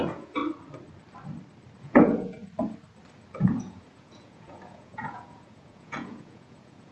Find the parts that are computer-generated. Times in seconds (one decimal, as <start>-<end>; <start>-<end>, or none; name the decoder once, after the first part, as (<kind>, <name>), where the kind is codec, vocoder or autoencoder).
0.0-0.4 (vocoder, Vocos); 1.8-2.4; 3.4-6.9

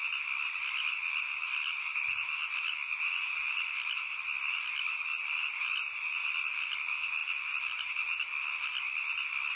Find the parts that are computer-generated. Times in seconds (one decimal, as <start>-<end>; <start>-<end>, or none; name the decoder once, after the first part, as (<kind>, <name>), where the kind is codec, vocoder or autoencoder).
none

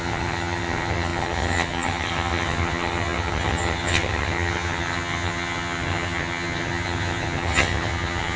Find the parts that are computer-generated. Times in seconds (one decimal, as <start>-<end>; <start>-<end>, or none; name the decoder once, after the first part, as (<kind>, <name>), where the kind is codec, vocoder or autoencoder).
0.0-8.4 (vocoder, HiFi-GAN)

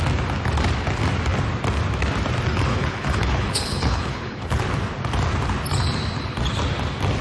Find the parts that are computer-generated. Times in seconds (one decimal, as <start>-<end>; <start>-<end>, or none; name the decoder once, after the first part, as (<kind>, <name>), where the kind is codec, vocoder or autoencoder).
2.7-4.6 (codec, HILCodec)

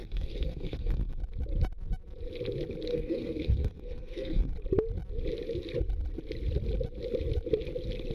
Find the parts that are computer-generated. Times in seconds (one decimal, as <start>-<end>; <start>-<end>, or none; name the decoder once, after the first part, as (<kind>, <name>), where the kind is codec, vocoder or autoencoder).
0.0-1.2 (codec, SNAC); 2.9-4.5

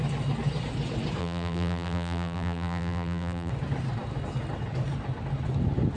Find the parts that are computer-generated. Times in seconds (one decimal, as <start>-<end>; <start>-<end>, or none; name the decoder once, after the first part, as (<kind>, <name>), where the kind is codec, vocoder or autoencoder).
1.2-3.5 (vocoder, BigVGAN v2)

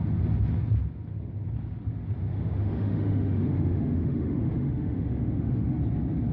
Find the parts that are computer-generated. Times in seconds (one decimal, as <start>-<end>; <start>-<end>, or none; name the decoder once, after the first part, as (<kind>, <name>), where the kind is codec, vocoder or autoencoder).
2.3-5.8 (autoencoder, DAC-VAE)

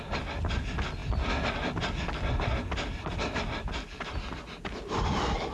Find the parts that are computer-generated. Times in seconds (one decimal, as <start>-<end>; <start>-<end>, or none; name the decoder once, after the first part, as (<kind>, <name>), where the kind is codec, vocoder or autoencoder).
none